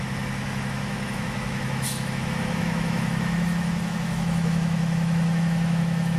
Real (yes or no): no